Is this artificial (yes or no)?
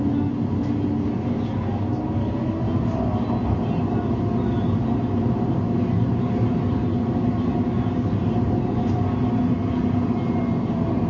no